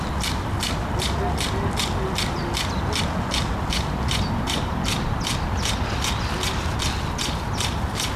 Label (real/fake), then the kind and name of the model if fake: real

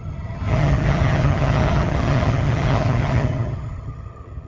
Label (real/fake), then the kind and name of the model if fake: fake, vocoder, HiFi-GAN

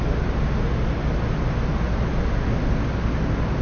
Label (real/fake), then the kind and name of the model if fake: real